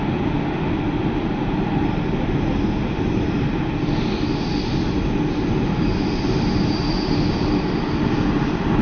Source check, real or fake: real